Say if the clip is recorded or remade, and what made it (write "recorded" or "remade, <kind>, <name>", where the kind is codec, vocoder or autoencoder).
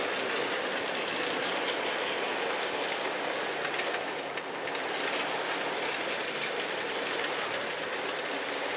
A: recorded